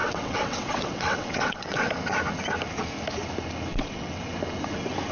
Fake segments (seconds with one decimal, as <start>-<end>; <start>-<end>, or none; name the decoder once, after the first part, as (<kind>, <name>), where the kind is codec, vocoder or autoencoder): 0.0-1.9 (vocoder, WaveNeXt); 3.7-4.2